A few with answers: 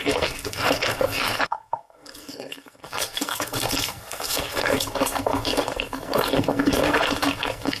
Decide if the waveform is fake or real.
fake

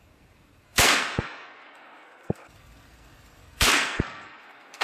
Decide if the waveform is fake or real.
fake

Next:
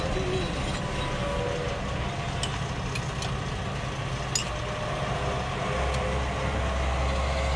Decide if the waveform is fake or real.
real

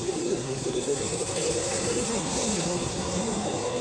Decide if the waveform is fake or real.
fake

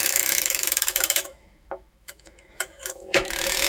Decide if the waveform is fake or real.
fake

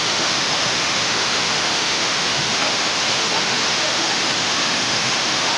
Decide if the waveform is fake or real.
fake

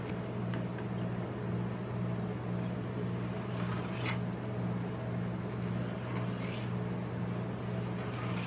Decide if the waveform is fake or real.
real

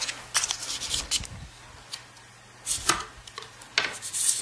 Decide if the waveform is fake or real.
real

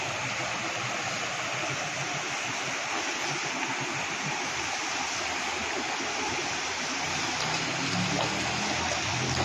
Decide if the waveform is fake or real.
real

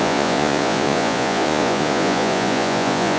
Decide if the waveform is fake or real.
fake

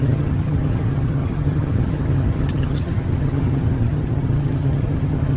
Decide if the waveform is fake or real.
fake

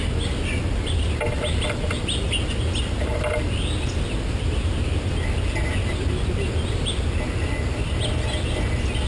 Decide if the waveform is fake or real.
real